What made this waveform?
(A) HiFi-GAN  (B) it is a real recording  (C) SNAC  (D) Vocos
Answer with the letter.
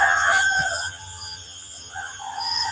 A